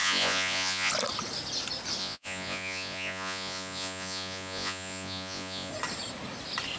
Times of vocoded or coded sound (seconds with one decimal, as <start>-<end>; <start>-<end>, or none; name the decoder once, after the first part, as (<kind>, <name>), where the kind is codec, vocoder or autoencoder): 0.0-0.9 (vocoder, Vocos); 2.0-5.7